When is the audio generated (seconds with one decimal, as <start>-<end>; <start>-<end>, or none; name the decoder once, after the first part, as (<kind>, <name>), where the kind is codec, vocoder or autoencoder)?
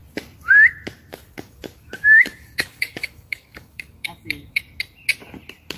1.1-4.6 (codec, DAC)